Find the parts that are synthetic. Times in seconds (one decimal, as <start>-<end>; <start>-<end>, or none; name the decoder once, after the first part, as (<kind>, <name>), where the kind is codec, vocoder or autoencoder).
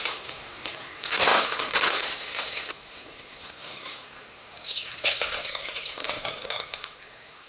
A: 0.0-7.5 (codec, SNAC)